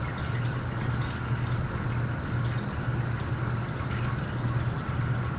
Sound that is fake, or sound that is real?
real